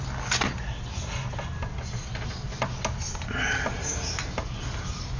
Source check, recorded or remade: recorded